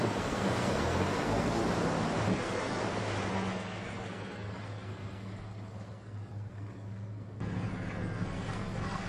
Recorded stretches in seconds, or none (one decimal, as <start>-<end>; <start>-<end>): 1.6-2.3; 2.8-3.3